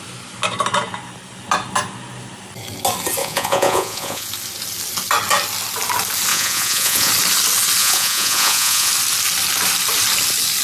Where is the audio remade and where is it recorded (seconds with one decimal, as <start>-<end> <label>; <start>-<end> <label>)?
0.0-3.2 recorded; 3.2-4.3 remade; 4.3-6.3 recorded; 6.3-7.1 remade; 7.1-7.8 recorded; 7.8-8.9 remade; 8.9-10.6 recorded